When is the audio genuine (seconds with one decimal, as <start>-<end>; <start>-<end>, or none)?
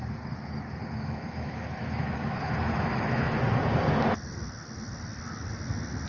0.0-0.8; 3.4-6.1